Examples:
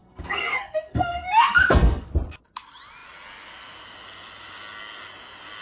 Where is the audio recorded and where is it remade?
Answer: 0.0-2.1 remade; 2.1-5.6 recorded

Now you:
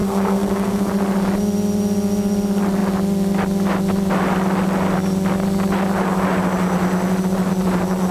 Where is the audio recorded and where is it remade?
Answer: 0.0-0.9 remade; 0.9-8.1 recorded

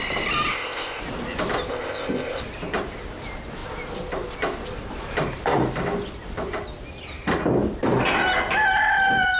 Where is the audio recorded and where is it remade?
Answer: 0.0-0.5 recorded; 0.5-1.0 remade; 1.0-1.7 recorded; 1.7-2.4 remade; 2.4-9.4 recorded

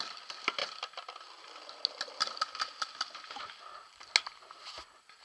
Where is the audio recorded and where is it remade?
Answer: 0.0-5.2 recorded

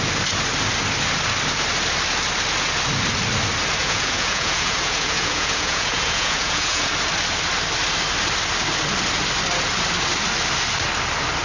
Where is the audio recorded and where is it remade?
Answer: 0.0-3.8 recorded; 3.8-6.9 remade; 6.9-11.4 recorded